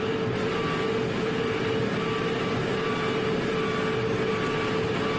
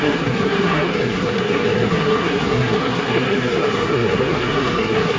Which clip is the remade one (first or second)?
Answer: second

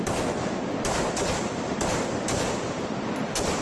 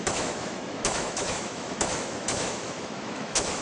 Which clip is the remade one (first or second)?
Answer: second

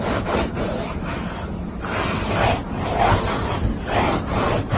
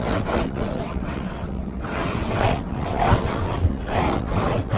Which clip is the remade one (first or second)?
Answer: second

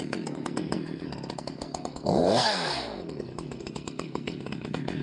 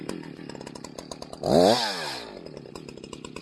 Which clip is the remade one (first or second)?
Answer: first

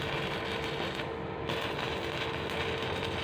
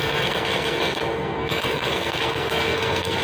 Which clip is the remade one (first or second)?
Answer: second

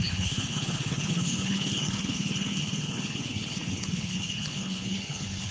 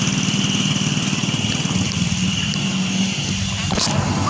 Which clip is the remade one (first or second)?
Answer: first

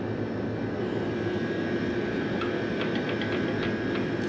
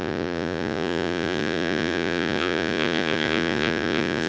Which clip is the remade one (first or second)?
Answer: second